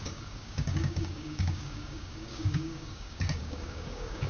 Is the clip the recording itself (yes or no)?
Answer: no